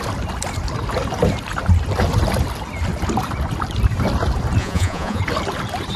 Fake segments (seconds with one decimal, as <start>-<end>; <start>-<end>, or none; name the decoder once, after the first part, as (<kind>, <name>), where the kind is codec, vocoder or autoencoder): 4.6-5.2 (vocoder, Vocos)